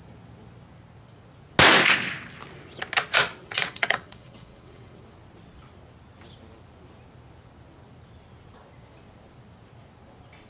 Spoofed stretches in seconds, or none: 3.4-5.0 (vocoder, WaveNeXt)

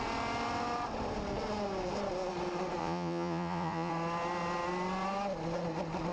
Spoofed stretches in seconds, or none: 2.8-3.9 (vocoder, Vocos)

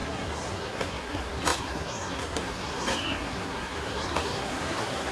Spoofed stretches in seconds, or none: 0.0-5.1 (codec, SNAC)

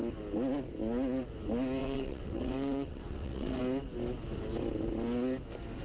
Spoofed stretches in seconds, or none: 1.8-3.6 (vocoder, WaveNeXt)

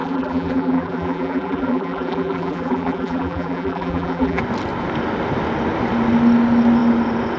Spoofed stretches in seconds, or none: 0.0-4.4 (vocoder, BigVGAN v2)

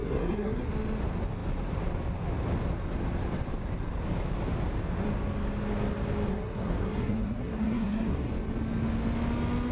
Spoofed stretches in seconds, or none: 0.0-0.7 (codec, SNAC); 6.3-8.3

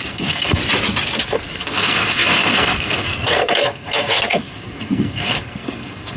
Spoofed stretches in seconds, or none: 0.0-0.6 (codec, SNAC); 1.2-6.2

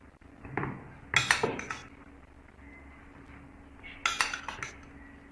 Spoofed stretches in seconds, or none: none